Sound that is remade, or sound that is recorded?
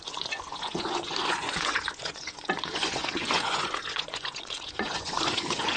remade